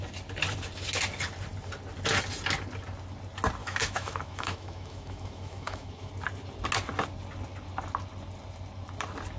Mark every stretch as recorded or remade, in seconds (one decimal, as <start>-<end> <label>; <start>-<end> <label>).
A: 0.0-3.6 recorded; 3.6-6.1 remade; 6.1-9.4 recorded